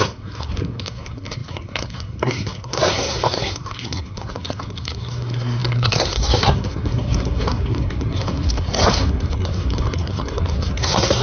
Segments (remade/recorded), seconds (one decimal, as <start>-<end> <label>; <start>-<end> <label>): 0.0-11.2 remade